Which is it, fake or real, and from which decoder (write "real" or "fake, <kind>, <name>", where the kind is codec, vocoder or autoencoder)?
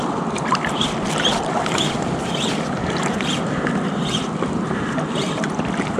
real